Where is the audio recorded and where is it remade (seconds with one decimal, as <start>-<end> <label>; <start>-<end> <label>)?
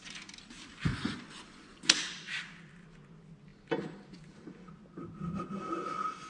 0.0-0.9 recorded; 0.9-1.8 remade; 1.8-6.3 recorded